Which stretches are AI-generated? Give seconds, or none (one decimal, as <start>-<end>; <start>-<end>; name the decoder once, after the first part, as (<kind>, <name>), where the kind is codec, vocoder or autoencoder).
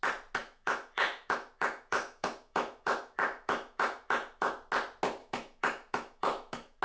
0.4-4.5 (autoencoder, DAC-VAE); 5.2-6.8